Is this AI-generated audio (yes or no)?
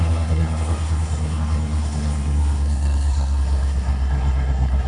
yes